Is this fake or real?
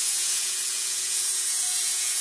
fake